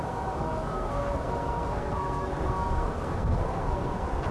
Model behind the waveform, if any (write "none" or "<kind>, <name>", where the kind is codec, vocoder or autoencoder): codec, SNAC